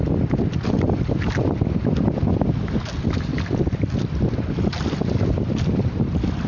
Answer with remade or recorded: recorded